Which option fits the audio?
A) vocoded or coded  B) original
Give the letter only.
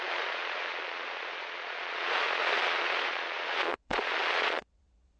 A